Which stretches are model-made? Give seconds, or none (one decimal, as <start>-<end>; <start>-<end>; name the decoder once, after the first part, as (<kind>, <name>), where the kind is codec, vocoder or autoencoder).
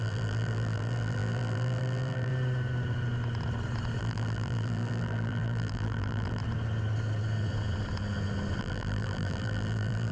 0.0-2.3 (vocoder, BigVGAN v2); 4.0-6.4; 8.6-10.1